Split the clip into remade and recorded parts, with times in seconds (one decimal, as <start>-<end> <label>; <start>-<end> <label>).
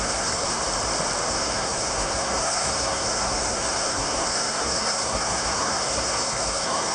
0.0-0.6 remade; 0.6-1.3 recorded; 1.3-6.9 remade